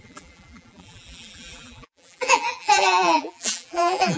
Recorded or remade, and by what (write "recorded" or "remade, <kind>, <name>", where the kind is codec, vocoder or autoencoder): remade, vocoder, BigVGAN v2